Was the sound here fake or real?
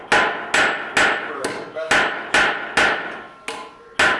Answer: real